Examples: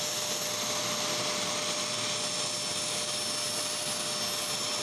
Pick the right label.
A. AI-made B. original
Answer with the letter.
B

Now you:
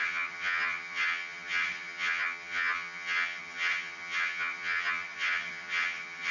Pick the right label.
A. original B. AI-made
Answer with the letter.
B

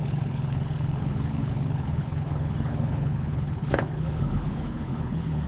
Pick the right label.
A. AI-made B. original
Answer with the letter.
A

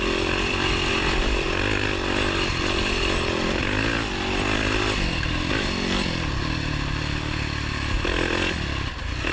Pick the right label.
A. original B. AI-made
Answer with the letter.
A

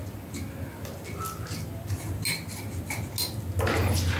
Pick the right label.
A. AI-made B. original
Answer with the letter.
B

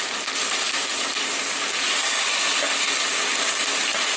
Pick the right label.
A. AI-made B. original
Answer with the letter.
B